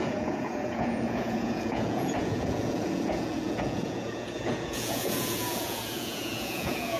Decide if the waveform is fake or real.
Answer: fake